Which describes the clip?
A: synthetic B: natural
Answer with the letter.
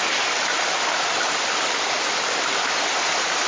B